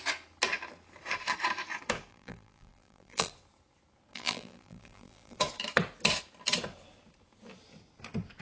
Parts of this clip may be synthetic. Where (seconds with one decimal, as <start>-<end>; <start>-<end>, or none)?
2.1-3.3; 4.1-5.4